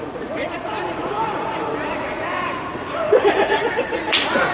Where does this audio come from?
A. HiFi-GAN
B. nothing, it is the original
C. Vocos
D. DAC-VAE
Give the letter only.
C